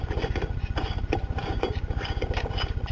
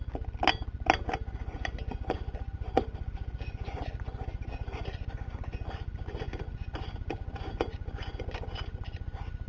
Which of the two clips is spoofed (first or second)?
first